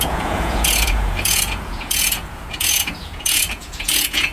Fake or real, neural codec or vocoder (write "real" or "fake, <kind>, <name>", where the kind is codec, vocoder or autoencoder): fake, vocoder, Vocos